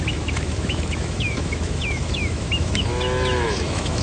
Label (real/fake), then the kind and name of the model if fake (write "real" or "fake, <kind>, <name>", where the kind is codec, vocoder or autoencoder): fake, autoencoder, DAC-VAE